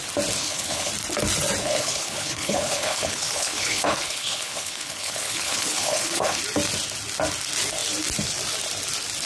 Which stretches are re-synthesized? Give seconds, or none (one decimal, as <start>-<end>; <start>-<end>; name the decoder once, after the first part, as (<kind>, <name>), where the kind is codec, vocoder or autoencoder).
0.4-0.9 (codec, HILCodec); 1.6-6.4